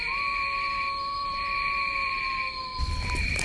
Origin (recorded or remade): remade